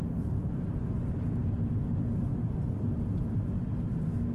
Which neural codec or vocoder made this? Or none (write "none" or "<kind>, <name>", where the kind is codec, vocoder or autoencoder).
none